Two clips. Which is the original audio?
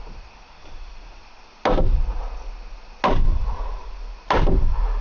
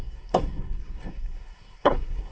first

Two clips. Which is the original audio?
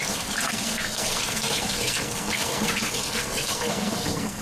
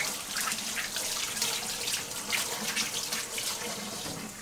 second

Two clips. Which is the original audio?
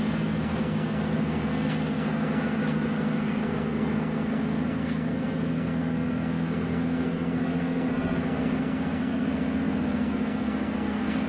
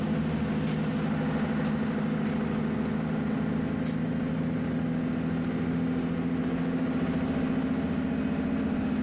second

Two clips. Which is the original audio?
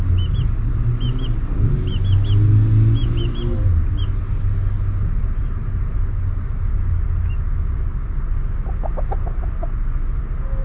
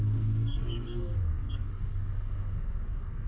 first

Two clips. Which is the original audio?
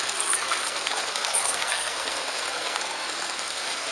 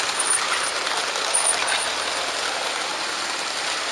second